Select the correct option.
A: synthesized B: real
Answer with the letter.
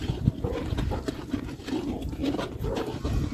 A